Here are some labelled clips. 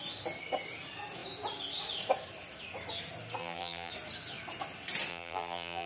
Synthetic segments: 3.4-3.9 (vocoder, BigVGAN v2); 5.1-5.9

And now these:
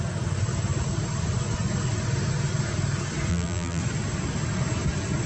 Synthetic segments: 3.3-3.8 (vocoder, BigVGAN v2)

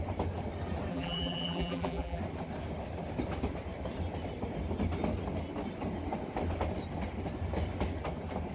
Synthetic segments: 0.9-2.2 (vocoder, BigVGAN v2)

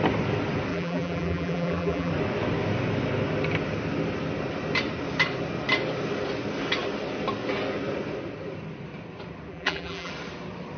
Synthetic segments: 0.7-2.1 (vocoder, BigVGAN v2); 9.5-10.1

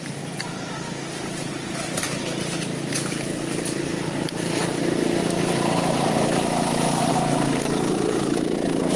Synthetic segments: 5.2-7.1 (vocoder, BigVGAN v2)

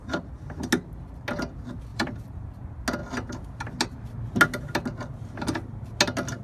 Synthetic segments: 1.9-2.4 (vocoder, BigVGAN v2)